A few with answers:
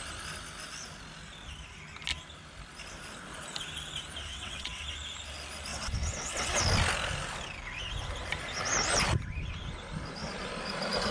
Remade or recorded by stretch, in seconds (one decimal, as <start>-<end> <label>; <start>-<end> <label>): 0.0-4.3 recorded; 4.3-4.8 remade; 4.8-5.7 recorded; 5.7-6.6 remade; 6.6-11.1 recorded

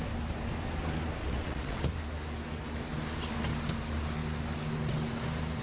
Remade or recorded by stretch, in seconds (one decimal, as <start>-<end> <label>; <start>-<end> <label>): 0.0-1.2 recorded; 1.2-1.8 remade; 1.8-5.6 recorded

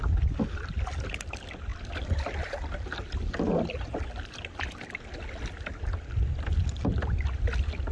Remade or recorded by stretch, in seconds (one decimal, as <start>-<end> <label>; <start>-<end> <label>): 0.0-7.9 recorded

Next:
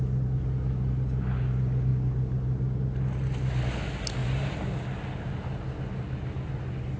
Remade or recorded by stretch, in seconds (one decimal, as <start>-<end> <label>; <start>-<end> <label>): 0.0-7.0 recorded